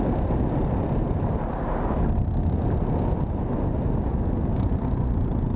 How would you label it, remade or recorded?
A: recorded